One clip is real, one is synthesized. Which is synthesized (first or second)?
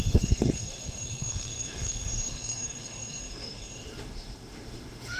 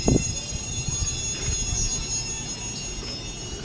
first